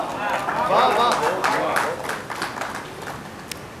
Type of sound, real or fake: real